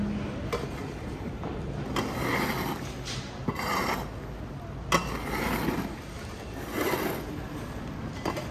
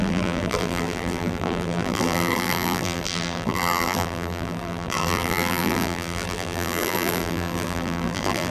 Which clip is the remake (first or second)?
second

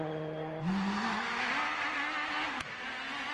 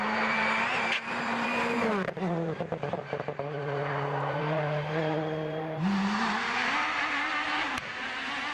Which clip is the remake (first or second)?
second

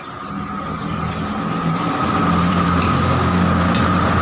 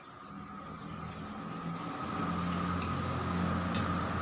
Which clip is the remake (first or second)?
first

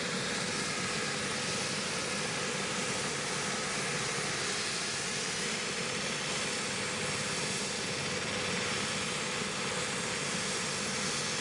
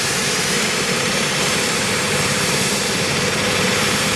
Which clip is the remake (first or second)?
second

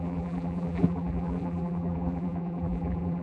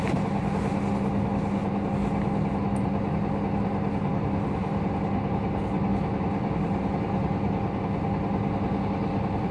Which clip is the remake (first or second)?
first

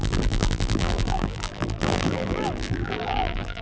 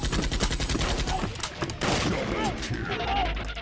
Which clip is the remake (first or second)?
first